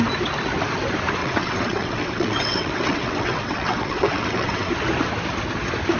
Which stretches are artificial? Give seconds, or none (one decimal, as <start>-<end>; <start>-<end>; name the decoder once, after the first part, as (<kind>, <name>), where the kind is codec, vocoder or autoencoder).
1.2-4.7 (vocoder, WaveNeXt)